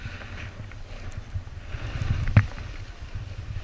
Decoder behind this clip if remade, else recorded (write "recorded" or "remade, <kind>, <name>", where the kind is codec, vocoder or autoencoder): recorded